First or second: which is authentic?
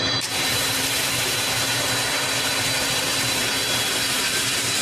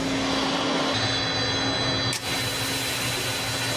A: second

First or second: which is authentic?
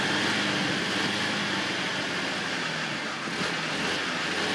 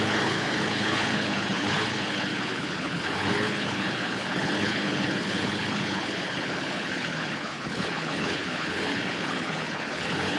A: first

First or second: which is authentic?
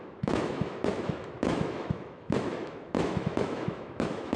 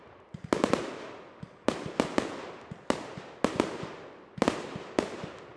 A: second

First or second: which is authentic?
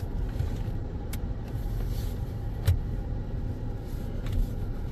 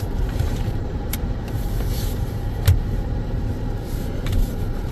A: first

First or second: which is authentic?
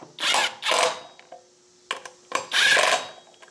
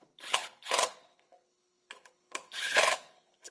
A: first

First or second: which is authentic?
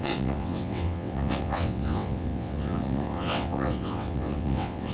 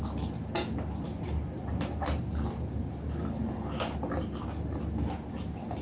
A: second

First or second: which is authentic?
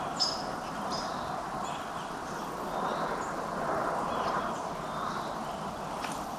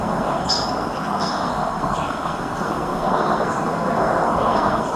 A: first